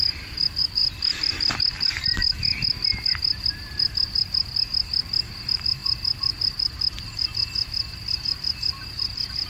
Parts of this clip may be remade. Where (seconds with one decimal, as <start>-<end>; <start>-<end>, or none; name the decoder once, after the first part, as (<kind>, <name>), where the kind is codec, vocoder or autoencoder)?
0.8-3.5 (vocoder, BigVGAN v2); 8.8-9.5